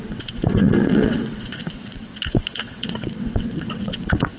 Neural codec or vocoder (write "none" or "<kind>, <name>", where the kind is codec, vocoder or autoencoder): vocoder, WaveNeXt